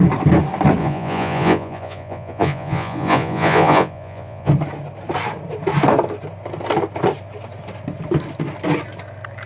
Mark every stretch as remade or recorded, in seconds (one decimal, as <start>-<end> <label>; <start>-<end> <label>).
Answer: 0.0-0.8 recorded; 0.8-4.5 remade; 4.5-9.5 recorded